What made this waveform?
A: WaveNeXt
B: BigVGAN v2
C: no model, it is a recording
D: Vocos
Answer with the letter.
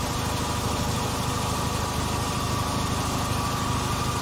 C